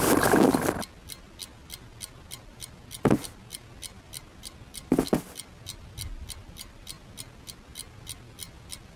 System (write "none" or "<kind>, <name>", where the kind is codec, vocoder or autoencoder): none